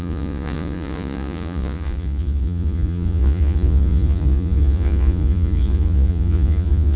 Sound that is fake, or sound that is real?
fake